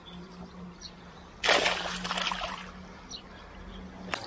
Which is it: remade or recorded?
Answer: recorded